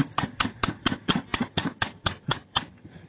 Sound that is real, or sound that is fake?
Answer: fake